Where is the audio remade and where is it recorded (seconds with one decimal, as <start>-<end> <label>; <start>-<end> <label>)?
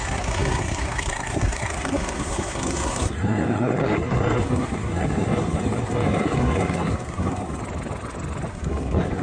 0.0-7.6 remade; 7.6-8.5 recorded; 8.5-9.2 remade